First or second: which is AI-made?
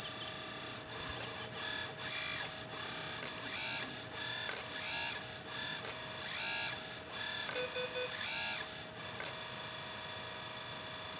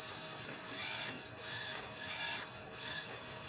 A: second